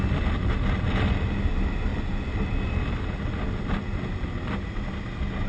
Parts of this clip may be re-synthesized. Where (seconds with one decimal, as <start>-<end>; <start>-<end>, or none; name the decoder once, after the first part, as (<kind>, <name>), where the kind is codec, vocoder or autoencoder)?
none